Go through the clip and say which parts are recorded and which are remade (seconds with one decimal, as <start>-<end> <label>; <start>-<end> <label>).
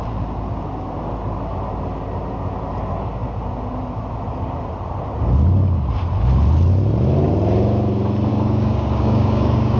0.0-8.3 recorded; 8.3-9.8 remade